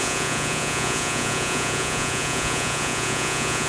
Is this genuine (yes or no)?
no